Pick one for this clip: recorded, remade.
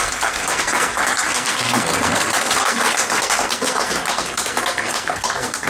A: remade